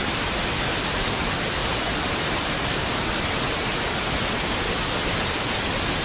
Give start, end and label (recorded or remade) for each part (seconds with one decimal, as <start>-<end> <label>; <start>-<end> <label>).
0.0-1.6 recorded; 1.6-2.9 remade; 2.9-6.0 recorded